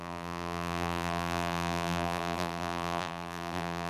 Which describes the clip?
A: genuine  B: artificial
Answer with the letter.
B